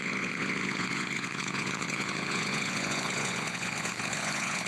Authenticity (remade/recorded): remade